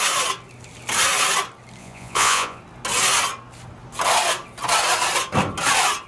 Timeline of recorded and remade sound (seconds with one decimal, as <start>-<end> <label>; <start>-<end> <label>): 0.0-1.8 recorded; 1.8-2.6 remade; 2.6-6.1 recorded